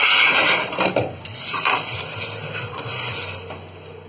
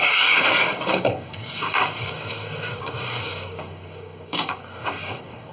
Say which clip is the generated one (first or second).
second